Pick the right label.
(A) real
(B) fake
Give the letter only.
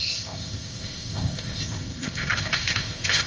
B